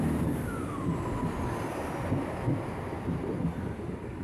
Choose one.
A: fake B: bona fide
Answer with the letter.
B